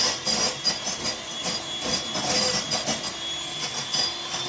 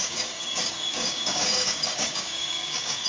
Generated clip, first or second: second